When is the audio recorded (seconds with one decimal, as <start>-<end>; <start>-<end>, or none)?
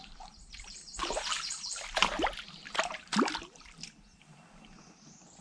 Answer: 3.1-5.4